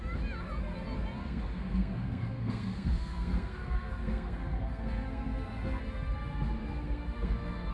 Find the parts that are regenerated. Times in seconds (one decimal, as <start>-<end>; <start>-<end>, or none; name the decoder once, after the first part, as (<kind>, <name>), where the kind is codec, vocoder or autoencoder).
1.2-5.8 (codec, SNAC); 6.6-7.7